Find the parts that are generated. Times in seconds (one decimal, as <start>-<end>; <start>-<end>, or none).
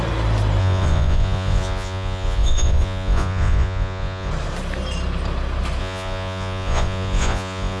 0.6-4.3; 5.8-7.8